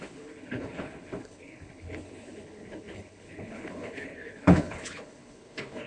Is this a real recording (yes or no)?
no